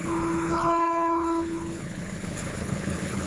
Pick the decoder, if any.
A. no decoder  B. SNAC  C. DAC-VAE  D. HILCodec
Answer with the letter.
D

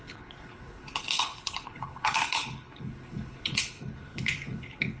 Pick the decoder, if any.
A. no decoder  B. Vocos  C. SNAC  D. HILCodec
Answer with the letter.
D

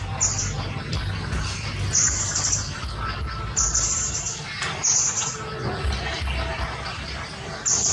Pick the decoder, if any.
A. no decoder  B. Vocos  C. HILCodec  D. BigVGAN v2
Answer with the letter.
A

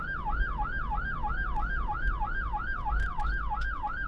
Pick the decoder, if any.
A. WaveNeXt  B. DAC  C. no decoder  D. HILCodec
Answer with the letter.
C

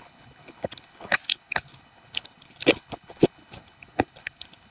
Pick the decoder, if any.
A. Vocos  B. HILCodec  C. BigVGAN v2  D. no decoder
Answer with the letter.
B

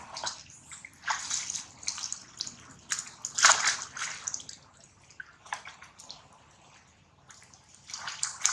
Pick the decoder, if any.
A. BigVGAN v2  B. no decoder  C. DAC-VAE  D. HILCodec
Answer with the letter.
B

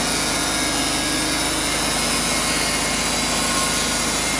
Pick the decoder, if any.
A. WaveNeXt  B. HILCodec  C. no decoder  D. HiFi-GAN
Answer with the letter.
C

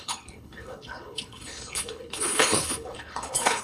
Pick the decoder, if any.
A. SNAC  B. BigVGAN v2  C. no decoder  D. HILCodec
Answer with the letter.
D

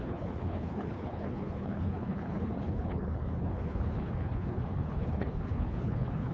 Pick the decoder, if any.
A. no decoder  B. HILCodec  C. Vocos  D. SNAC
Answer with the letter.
B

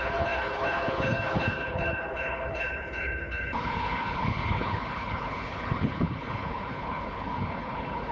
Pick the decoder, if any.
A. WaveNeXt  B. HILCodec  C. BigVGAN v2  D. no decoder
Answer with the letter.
B